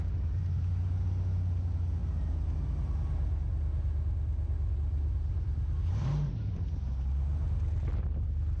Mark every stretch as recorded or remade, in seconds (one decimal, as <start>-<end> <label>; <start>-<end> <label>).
0.0-8.6 recorded